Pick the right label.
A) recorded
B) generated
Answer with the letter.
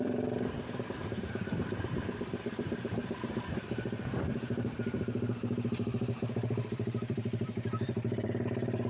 B